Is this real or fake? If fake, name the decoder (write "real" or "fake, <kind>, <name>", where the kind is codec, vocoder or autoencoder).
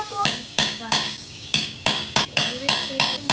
fake, codec, DAC